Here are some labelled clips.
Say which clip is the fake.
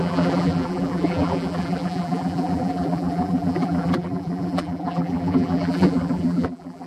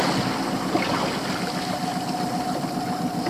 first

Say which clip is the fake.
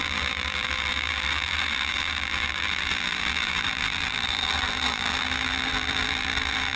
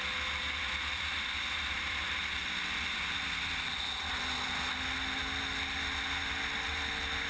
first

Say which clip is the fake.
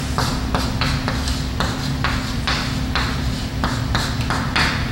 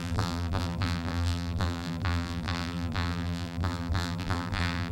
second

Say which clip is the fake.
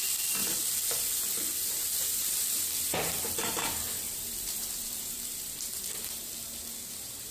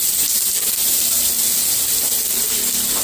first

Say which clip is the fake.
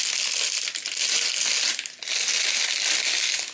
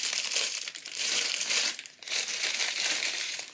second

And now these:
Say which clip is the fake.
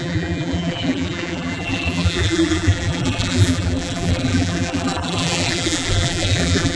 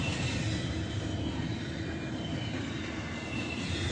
first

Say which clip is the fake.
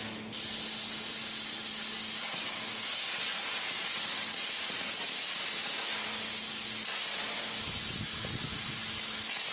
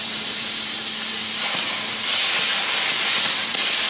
second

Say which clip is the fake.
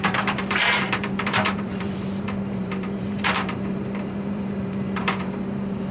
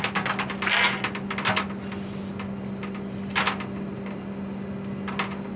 first